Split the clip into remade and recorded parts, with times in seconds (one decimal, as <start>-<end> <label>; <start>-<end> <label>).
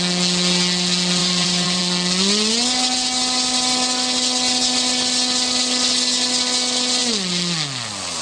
0.0-1.2 recorded; 1.2-1.8 remade; 1.8-8.2 recorded